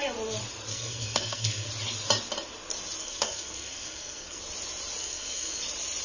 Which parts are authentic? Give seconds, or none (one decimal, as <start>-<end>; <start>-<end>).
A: 0.0-0.7; 1.7-3.0; 4.4-5.0; 5.6-6.0

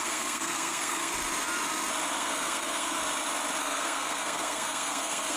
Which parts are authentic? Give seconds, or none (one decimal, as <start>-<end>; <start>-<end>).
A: 1.1-2.1; 3.0-3.6

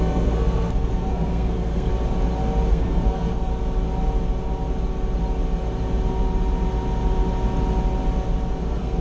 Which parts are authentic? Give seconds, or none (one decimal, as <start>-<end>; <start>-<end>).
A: 1.9-2.7; 3.5-8.6

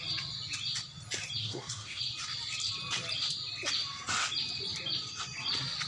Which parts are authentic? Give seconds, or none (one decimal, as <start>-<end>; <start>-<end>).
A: 0.0-1.4; 2.0-5.9